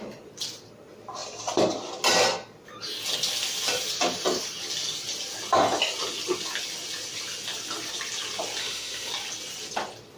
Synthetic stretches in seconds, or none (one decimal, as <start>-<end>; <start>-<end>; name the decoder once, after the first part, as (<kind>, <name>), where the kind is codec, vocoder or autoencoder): 8.6-9.1 (autoencoder, DAC-VAE)